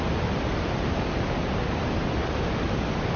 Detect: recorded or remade recorded